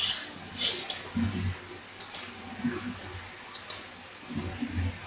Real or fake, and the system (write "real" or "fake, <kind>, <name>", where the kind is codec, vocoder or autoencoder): real